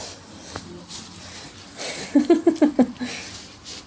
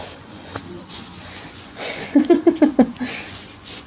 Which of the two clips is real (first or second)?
first